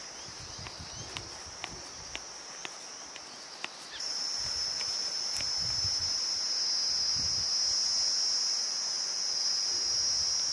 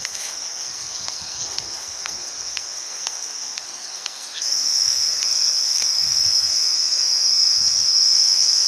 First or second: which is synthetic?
second